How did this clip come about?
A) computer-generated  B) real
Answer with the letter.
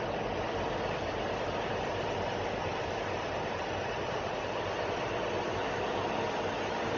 B